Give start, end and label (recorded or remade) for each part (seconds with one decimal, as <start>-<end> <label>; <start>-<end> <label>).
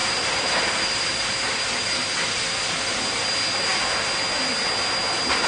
0.0-3.3 remade; 3.3-5.5 recorded